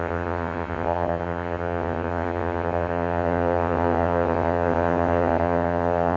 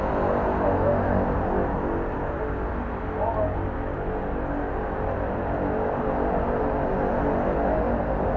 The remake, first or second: first